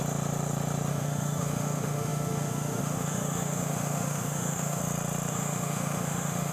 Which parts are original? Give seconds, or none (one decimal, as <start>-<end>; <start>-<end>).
0.0-0.9; 4.8-5.3